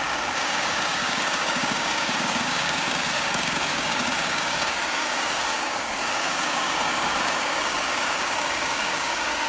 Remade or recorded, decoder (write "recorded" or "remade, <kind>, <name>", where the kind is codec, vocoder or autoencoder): remade, codec, DAC